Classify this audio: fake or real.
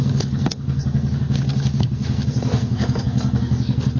fake